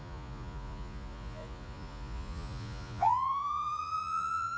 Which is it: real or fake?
fake